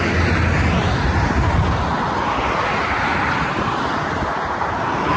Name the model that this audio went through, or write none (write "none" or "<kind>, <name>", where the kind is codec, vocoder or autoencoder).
none